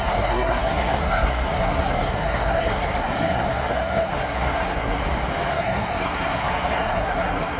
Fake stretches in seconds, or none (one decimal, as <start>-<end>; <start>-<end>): 0.0-5.0; 5.5-7.6